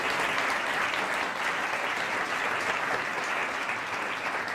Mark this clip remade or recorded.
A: recorded